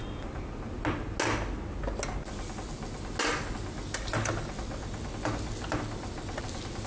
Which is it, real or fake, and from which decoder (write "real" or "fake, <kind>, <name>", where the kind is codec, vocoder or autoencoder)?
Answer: real